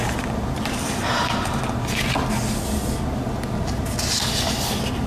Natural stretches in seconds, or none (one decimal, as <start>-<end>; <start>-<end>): 1.6-5.1